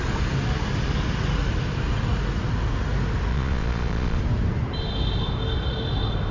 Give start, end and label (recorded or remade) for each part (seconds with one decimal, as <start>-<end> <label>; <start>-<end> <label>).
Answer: 0.0-3.3 recorded; 3.3-4.2 remade; 4.2-6.3 recorded